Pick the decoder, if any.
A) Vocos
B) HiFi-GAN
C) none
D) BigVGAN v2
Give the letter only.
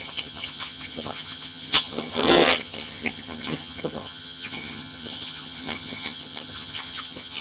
B